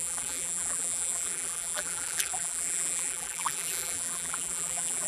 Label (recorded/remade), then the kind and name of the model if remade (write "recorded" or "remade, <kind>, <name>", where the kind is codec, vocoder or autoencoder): remade, vocoder, BigVGAN v2